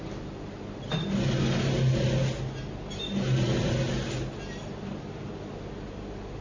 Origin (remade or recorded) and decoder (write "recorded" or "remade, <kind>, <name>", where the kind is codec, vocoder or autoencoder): recorded